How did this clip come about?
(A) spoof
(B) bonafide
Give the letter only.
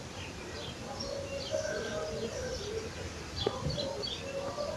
B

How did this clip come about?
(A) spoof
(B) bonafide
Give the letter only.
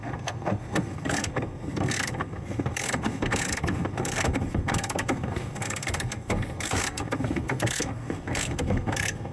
A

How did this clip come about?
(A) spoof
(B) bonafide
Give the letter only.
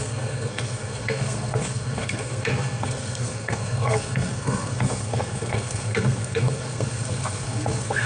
A